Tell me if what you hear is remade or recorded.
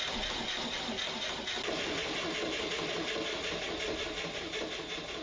recorded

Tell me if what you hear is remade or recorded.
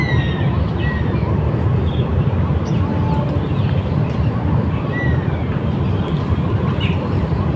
recorded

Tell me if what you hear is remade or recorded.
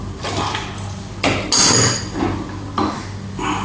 recorded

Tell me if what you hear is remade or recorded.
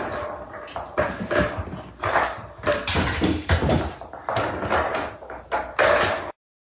recorded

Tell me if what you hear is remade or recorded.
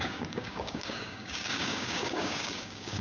remade